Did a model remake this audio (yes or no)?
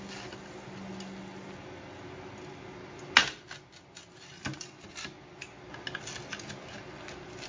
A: no